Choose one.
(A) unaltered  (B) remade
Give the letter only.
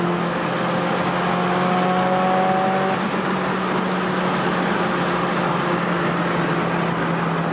A